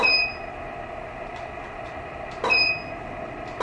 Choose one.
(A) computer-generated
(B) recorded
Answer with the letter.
B